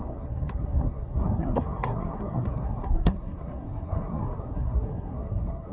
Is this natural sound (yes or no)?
no